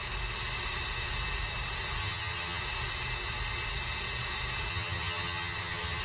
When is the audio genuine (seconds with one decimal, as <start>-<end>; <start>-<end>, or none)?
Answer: 0.0-2.0; 2.6-4.7